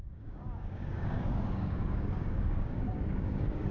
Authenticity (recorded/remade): remade